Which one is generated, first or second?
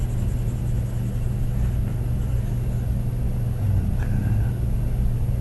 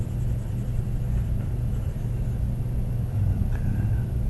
second